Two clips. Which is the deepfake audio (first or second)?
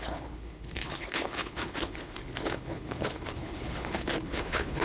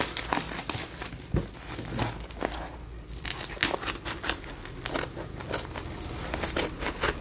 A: first